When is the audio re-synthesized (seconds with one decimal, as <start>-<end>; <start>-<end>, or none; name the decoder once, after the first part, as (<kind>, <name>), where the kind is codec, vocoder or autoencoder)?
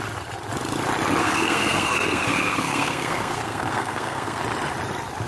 1.2-4.4 (codec, SNAC)